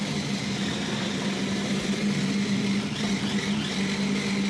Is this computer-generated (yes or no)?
no